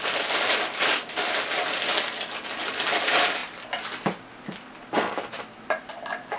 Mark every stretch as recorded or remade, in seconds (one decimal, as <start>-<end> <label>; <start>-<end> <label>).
0.0-6.4 recorded